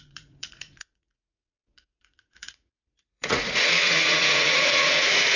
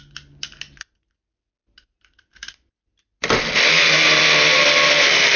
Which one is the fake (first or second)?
first